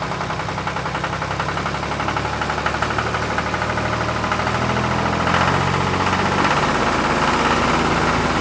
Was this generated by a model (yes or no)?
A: no